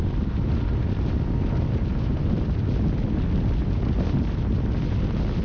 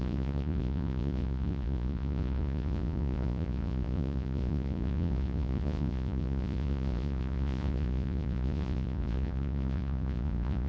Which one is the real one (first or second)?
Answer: first